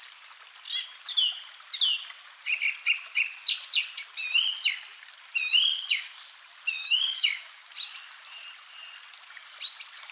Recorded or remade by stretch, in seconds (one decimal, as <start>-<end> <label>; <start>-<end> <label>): 0.0-5.7 recorded; 5.7-6.2 remade; 6.2-6.8 recorded; 6.8-7.7 remade; 7.7-10.1 recorded